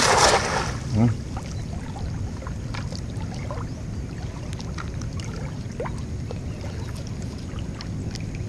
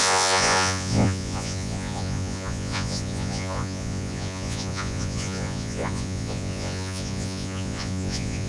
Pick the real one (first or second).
first